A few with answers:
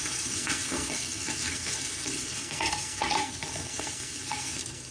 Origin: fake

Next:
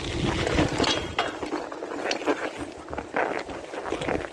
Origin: real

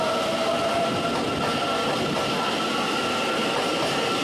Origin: real